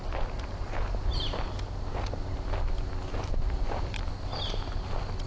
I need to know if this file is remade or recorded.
recorded